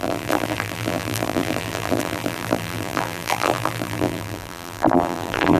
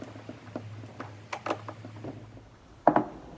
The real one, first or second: second